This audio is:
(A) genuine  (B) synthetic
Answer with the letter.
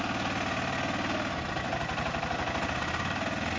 A